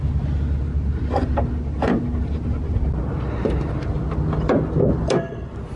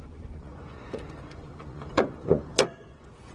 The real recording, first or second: first